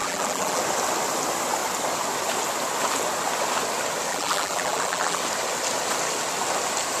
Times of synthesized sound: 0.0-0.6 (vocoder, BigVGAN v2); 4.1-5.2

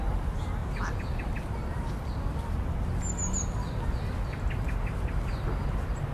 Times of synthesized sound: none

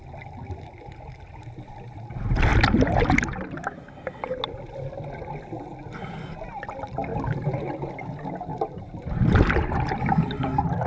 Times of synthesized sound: 7.1-7.9 (vocoder, BigVGAN v2); 8.5-10.3

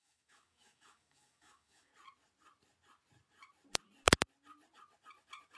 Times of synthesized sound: 0.0-1.9 (autoencoder, DAC-VAE)

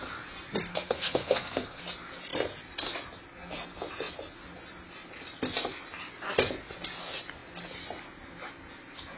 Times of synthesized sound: 0.7-1.8 (codec, SNAC)